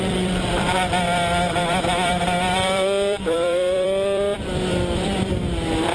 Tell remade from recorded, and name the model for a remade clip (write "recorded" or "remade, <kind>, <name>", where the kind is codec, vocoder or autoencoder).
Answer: remade, vocoder, BigVGAN v2